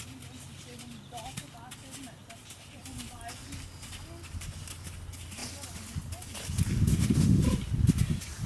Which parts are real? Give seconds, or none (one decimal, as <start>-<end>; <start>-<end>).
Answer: 0.0-6.9; 7.4-8.5